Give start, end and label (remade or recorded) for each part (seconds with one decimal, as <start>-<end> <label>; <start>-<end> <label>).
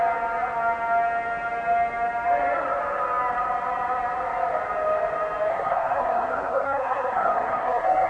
0.0-5.5 recorded; 5.5-8.1 remade